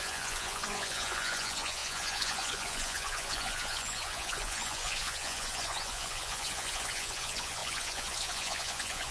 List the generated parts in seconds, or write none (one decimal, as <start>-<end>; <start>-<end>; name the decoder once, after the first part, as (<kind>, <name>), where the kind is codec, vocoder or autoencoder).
0.0-9.1 (vocoder, Vocos)